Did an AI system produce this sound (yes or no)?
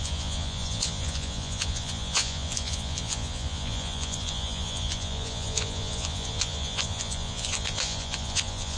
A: yes